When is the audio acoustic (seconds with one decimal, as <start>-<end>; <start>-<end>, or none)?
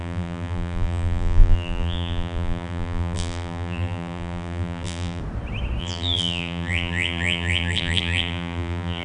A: 5.2-5.8